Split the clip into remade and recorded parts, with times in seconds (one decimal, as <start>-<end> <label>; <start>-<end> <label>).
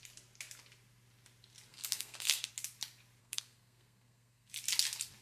0.0-1.7 recorded; 1.7-2.5 remade; 2.5-3.2 recorded; 3.2-4.5 remade; 4.5-5.2 recorded